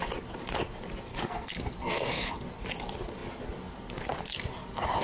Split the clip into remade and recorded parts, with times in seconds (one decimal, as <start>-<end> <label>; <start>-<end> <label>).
0.0-1.1 recorded; 1.1-2.3 remade; 2.3-5.0 recorded